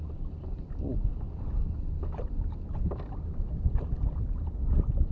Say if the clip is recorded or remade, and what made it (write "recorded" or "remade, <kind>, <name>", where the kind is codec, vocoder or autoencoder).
recorded